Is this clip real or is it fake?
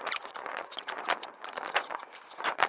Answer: fake